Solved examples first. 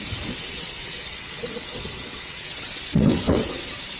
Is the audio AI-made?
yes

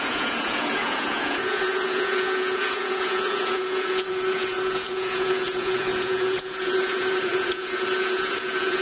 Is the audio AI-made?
yes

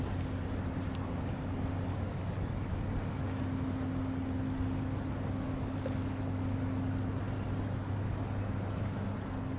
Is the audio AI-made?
no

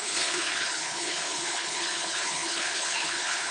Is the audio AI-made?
yes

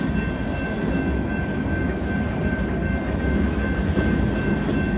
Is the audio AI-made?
no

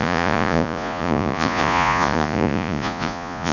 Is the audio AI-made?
yes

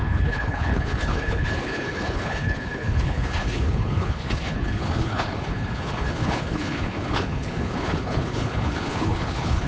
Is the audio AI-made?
yes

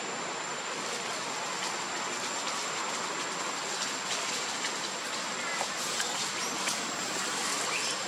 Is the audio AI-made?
no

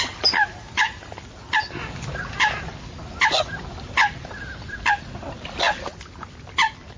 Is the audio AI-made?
no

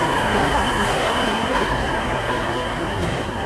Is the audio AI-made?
yes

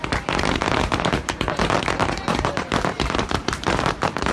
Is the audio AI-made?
yes